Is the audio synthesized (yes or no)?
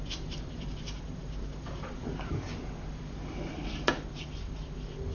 yes